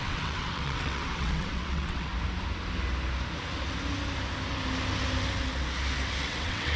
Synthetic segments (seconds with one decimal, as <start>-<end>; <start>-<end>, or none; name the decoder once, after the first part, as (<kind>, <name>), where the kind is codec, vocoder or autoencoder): 0.0-2.1 (vocoder, WaveNeXt); 6.2-6.8